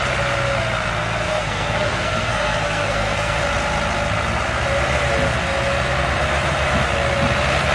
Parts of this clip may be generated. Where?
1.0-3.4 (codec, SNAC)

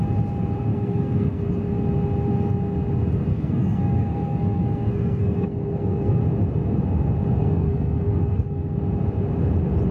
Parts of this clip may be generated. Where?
0.7-1.4 (codec, SNAC); 3.3-6.2; 7.4-8.8

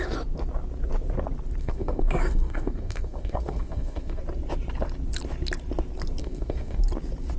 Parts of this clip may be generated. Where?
1.6-4.2 (codec, SNAC); 6.2-6.8

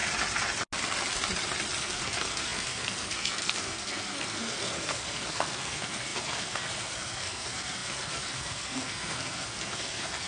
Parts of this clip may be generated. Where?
1.8-10.3 (codec, SNAC)

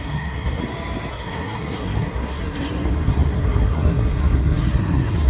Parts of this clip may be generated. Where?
0.0-0.6 (codec, SNAC); 1.1-5.3

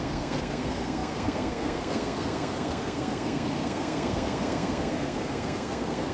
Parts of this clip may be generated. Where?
0.0-6.1 (codec, SNAC)

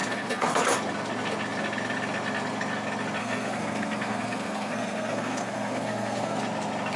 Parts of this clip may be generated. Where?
0.0-0.6 (codec, SNAC); 3.2-6.4